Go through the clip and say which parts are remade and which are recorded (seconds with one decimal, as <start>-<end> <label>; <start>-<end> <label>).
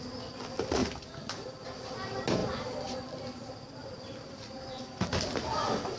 0.0-6.0 recorded